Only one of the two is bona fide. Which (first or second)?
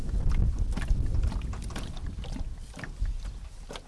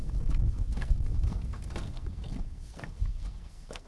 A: first